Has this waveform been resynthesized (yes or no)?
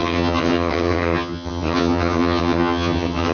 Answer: yes